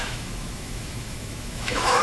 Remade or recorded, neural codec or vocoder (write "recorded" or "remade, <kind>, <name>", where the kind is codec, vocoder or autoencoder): remade, autoencoder, DAC-VAE